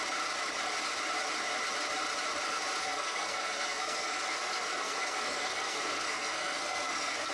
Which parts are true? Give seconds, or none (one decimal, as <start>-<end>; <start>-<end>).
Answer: 0.0-2.8